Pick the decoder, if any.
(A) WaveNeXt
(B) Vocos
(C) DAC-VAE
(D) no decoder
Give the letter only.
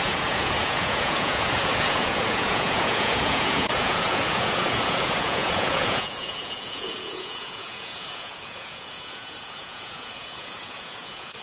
B